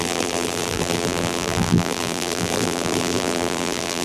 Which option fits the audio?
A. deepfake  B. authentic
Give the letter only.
A